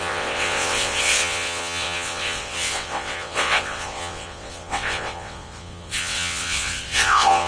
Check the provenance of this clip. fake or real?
fake